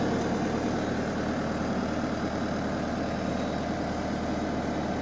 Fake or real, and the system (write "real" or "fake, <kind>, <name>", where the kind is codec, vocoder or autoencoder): real